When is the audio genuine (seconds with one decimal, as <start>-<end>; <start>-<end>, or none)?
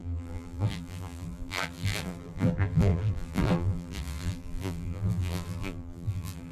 none